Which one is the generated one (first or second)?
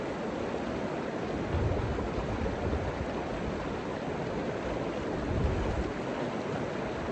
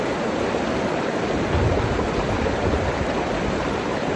second